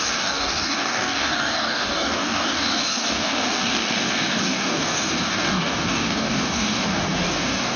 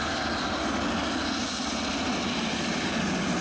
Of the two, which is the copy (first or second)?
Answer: first